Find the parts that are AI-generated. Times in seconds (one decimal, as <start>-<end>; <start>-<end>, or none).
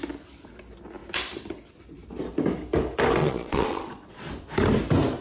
3.2-4.3